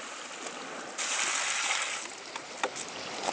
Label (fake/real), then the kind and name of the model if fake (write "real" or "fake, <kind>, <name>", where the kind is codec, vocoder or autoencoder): real